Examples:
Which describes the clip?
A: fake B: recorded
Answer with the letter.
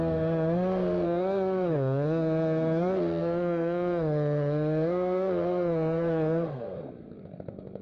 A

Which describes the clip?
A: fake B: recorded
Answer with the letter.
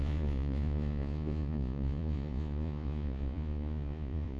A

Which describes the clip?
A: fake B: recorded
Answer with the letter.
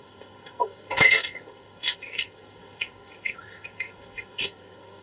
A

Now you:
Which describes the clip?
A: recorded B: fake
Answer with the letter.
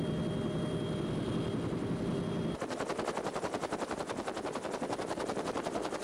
A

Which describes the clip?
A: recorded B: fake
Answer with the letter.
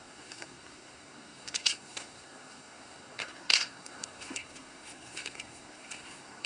B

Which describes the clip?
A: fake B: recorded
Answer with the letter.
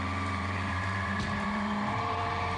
A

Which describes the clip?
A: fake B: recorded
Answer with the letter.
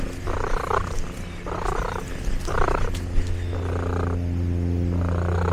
B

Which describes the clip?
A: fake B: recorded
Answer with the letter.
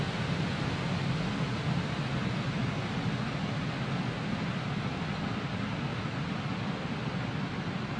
B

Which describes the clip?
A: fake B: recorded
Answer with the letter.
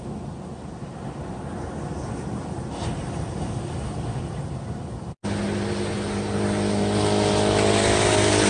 B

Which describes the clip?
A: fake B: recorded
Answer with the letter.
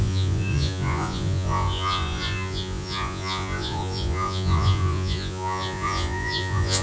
A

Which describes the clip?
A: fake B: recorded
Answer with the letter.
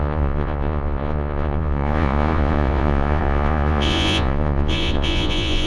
A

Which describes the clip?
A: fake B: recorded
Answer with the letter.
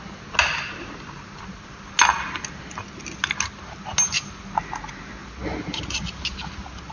B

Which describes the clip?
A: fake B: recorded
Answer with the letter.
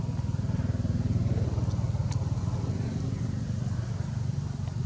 B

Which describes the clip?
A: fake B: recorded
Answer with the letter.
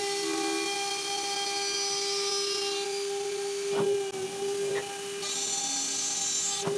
B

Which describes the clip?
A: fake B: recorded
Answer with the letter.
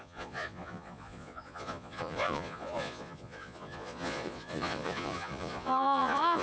A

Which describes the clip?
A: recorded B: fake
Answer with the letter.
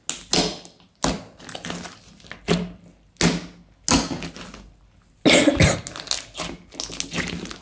A